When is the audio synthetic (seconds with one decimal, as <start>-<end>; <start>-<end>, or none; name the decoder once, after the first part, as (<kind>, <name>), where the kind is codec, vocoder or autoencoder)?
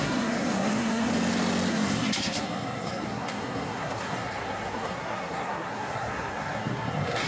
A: 0.0-1.1 (codec, SNAC); 1.7-7.3